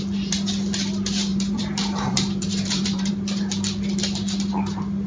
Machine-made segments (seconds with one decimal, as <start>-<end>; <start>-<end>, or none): 1.3-3.1